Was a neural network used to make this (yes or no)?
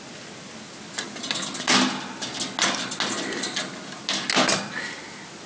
no